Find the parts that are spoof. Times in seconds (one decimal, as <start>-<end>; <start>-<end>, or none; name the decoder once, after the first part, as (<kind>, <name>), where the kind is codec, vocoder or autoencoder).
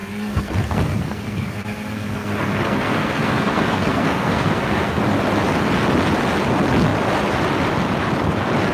0.0-5.0 (codec, SNAC)